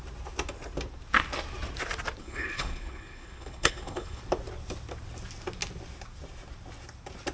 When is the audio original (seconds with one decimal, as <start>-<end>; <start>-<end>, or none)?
0.0-2.2; 4.2-7.3